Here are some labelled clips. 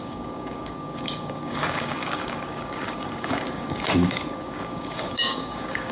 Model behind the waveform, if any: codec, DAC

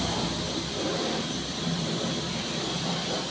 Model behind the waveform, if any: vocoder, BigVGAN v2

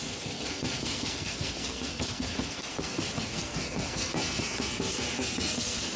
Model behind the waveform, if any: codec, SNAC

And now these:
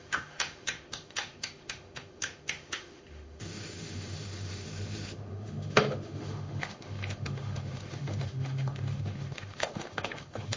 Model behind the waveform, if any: autoencoder, DAC-VAE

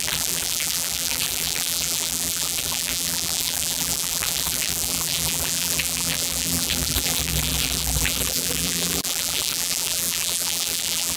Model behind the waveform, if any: vocoder, BigVGAN v2